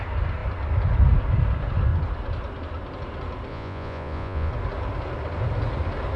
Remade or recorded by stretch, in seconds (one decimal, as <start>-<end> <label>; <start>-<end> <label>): 0.0-3.5 recorded; 3.5-4.5 remade; 4.5-6.2 recorded